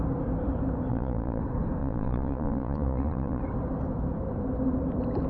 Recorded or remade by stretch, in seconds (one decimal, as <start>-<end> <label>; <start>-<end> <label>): 0.0-0.9 recorded; 0.9-1.4 remade; 1.4-1.8 recorded; 1.8-3.4 remade; 3.4-5.3 recorded